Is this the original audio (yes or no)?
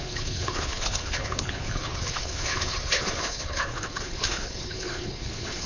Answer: no